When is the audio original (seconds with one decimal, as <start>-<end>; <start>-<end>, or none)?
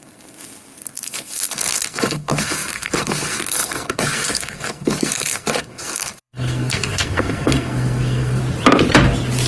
8.4-9.5